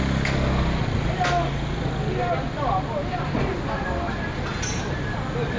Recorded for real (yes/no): yes